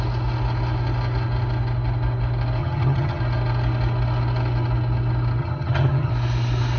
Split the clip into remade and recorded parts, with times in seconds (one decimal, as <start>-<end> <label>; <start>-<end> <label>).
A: 0.0-2.6 recorded; 2.6-3.2 remade; 3.2-5.4 recorded; 5.4-6.1 remade; 6.1-6.8 recorded